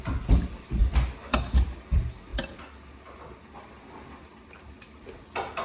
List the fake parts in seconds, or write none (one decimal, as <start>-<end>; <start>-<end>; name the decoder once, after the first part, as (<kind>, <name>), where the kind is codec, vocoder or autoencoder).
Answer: none